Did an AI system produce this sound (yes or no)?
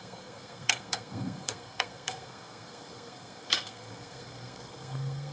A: yes